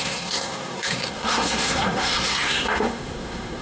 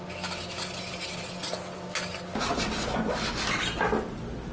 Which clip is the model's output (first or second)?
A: first